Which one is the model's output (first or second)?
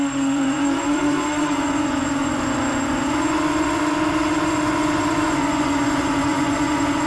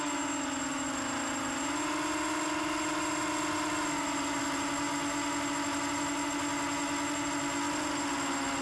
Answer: first